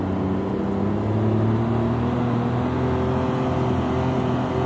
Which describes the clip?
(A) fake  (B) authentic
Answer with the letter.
B